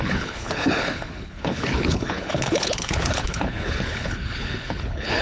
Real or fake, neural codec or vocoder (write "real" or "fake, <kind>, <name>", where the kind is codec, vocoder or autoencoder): fake, codec, HILCodec